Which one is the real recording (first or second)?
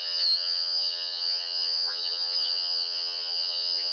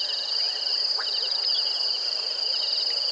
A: second